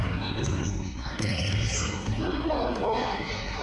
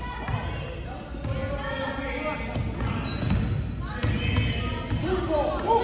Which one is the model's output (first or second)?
first